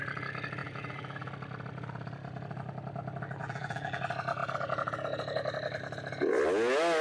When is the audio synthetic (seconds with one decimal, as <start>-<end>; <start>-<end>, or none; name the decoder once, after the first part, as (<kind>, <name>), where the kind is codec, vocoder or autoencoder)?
0.6-1.3 (vocoder, BigVGAN v2); 3.4-4.0